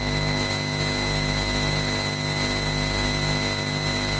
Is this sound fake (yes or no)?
no